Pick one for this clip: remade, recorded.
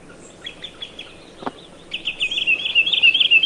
recorded